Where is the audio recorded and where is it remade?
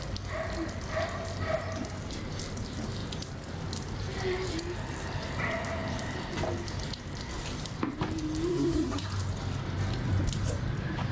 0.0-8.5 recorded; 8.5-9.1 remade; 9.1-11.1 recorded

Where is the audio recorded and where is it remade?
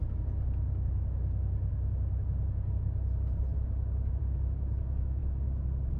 0.0-6.0 recorded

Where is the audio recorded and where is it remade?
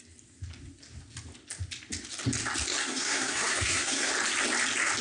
0.0-2.8 recorded; 2.8-4.1 remade; 4.1-5.0 recorded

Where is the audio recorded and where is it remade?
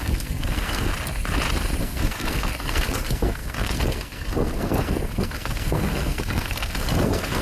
0.0-0.9 remade; 0.9-1.8 recorded; 1.8-7.4 remade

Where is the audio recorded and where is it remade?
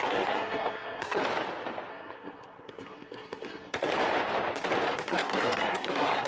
0.0-1.2 remade; 1.2-1.9 recorded; 1.9-3.9 remade; 3.9-4.9 recorded; 4.9-6.3 remade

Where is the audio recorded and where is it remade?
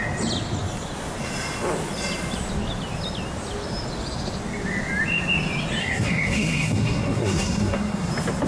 0.0-5.8 recorded; 5.8-8.1 remade; 8.1-8.5 recorded